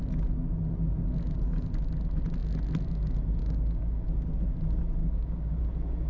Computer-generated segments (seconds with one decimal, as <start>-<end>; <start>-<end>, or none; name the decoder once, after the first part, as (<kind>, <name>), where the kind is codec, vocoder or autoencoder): 3.4-4.1 (codec, DAC); 5.0-5.6